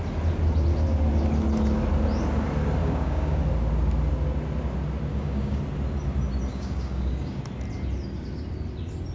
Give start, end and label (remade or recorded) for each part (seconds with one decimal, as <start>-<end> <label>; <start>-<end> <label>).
0.0-2.8 recorded; 2.8-3.4 remade; 3.4-5.1 recorded; 5.1-5.6 remade; 5.6-6.5 recorded; 6.5-7.4 remade; 7.4-9.1 recorded